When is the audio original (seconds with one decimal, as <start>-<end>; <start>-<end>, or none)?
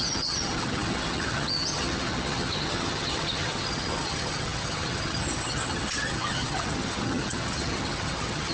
none